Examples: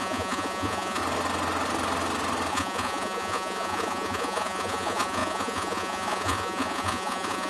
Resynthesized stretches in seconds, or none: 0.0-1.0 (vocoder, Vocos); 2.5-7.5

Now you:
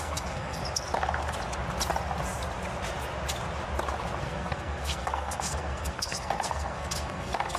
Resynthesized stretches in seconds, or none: 0.0-0.6 (codec, SNAC); 4.2-7.6

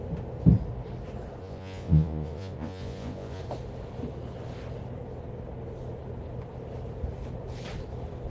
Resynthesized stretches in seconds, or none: 1.4-3.4 (vocoder, Vocos)

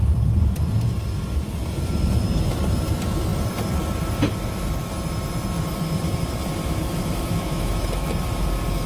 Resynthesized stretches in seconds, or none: 6.6-8.1 (autoencoder, DAC-VAE)

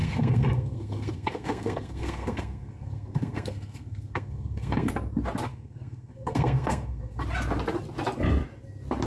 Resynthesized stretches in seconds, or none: 0.0-4.9 (codec, SNAC); 5.5-7.2

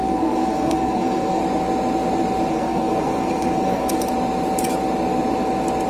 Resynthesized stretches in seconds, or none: 0.0-1.4 (codec, SNAC); 2.5-3.9

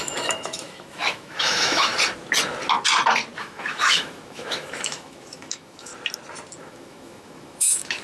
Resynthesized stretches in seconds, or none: 0.0-1.9 (autoencoder, DAC-VAE); 3.4-5.9; 6.6-8.0